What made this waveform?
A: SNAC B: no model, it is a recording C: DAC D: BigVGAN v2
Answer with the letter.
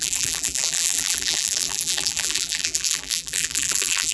D